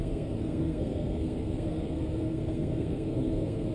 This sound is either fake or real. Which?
fake